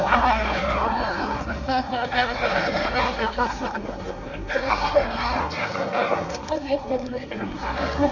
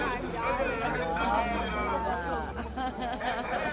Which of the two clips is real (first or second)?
second